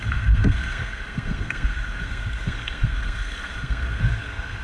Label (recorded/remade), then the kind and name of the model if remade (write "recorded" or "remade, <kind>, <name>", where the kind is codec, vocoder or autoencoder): remade, codec, SNAC